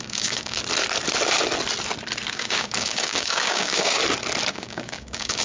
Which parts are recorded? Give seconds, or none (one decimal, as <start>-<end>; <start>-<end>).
0.6-2.3; 4.0-4.5